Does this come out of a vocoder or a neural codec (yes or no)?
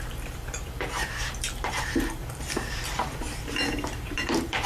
yes